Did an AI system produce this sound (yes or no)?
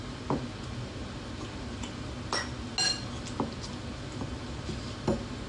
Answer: no